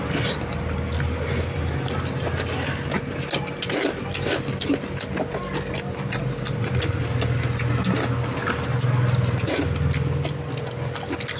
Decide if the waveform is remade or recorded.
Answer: recorded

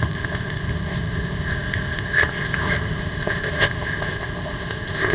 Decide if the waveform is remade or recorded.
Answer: remade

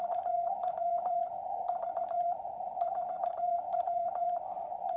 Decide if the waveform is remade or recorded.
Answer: remade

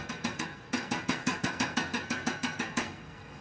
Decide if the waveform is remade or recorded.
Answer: remade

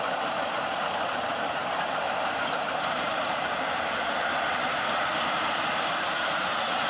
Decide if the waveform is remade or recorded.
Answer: remade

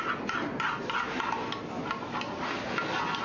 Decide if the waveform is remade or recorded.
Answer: recorded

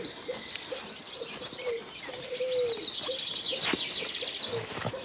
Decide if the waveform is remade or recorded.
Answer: recorded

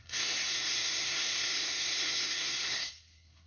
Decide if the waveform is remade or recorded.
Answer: remade